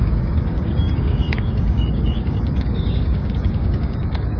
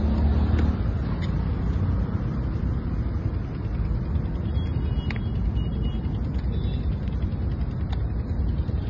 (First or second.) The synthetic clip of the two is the first